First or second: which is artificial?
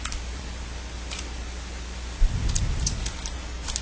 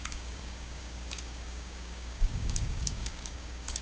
second